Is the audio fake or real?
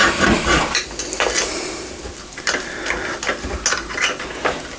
real